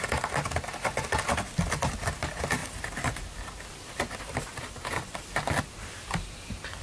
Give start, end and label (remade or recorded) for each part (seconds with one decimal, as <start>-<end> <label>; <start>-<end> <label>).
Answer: 0.0-6.8 recorded